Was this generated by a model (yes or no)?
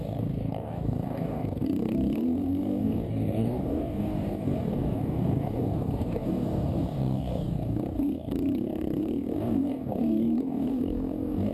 yes